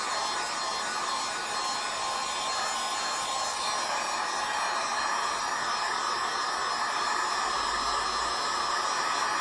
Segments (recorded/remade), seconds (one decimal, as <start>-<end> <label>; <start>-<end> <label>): 0.0-9.4 recorded